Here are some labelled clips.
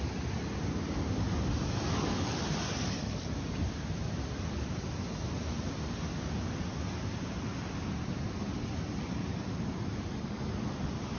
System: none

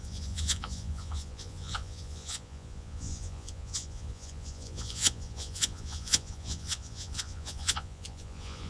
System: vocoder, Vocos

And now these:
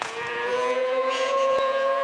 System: vocoder, Vocos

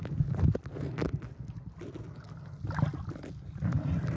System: none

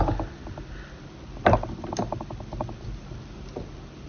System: none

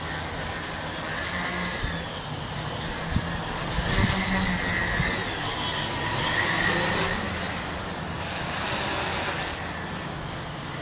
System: none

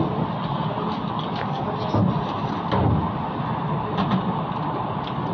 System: none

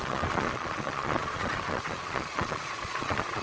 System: vocoder, Vocos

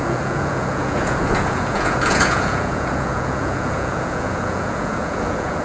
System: vocoder, Vocos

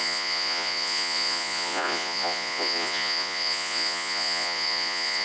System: vocoder, Vocos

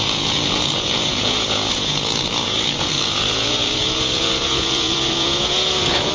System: vocoder, Vocos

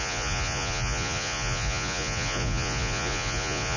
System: vocoder, Vocos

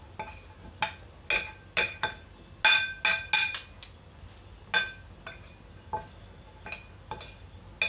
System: none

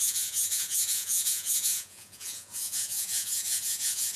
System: vocoder, Vocos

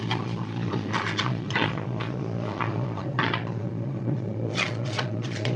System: vocoder, Vocos